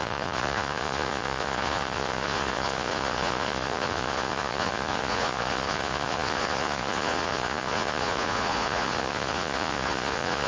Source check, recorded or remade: remade